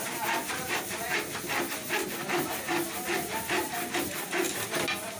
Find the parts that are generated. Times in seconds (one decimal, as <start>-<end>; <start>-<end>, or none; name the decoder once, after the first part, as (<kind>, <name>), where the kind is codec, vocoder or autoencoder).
0.4-1.2 (vocoder, BigVGAN v2)